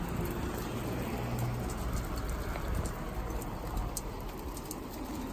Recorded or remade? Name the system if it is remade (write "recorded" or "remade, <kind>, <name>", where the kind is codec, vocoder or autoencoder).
recorded